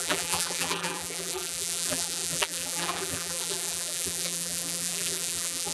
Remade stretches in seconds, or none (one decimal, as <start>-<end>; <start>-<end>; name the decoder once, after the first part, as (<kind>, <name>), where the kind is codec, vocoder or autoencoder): 0.0-5.7 (vocoder, BigVGAN v2)